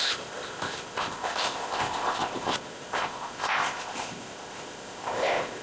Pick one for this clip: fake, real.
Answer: fake